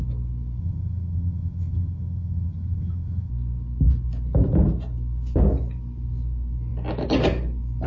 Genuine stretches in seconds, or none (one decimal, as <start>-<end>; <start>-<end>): 0.0-0.6; 3.3-7.9